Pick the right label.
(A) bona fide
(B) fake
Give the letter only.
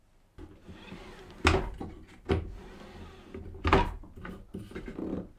A